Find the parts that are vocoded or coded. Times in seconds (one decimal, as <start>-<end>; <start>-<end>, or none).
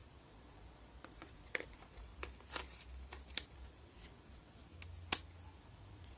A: 0.0-2.1; 3.5-4.7; 5.6-6.2